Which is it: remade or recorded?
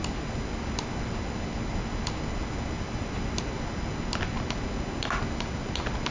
recorded